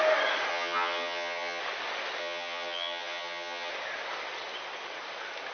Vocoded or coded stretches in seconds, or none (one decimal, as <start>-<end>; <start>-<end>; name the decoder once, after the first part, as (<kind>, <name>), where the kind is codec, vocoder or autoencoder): 0.5-1.6 (vocoder, HiFi-GAN); 2.2-3.7